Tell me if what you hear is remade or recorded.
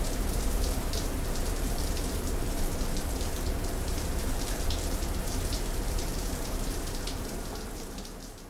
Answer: remade